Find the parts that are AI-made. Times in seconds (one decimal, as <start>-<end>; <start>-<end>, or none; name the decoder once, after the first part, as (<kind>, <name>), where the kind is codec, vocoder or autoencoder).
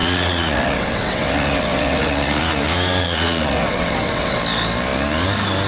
0.0-2.4 (vocoder, WaveNeXt); 3.0-4.4